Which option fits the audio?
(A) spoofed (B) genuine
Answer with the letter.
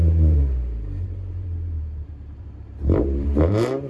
A